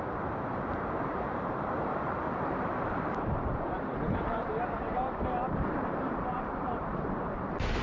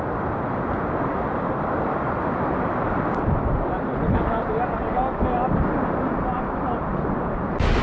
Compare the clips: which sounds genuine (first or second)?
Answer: second